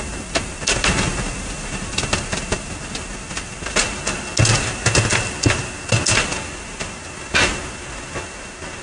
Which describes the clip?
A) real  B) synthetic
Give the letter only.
A